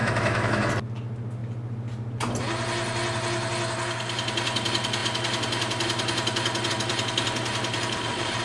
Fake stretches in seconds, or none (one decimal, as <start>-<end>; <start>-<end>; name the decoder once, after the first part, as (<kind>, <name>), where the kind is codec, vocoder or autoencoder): 0.0-0.7 (autoencoder, DAC-VAE)